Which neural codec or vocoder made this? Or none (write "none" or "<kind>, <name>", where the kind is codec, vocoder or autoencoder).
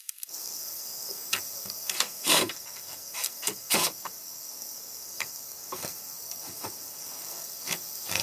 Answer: codec, SNAC